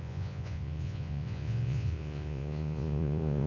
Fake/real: fake